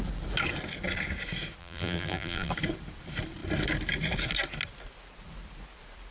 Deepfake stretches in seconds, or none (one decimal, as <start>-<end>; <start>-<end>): 1.6-2.5